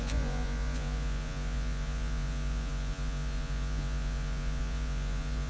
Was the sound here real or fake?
fake